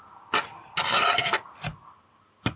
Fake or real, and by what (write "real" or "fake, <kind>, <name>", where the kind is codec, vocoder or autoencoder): real